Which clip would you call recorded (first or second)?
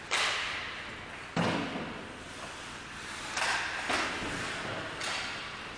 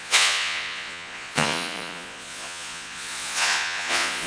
first